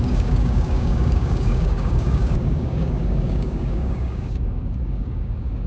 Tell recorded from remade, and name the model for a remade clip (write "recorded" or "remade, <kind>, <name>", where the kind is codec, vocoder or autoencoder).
remade, codec, DAC